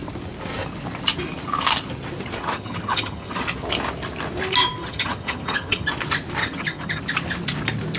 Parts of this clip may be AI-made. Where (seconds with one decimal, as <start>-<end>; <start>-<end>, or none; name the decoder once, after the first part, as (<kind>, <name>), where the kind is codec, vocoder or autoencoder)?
2.4-3.4 (vocoder, HiFi-GAN); 4.8-5.9; 6.4-7.0